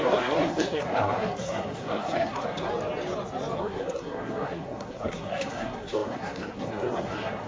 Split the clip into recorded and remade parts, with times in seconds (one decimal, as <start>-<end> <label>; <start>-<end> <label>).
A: 0.0-2.7 remade; 2.7-3.6 recorded; 3.6-7.5 remade